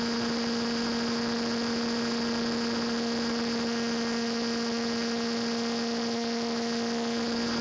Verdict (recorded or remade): recorded